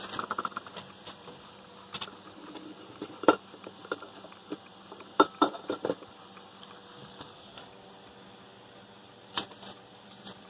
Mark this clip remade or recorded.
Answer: remade